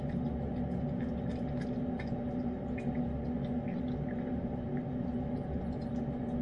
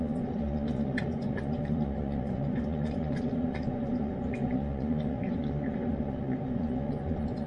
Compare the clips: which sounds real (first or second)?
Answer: first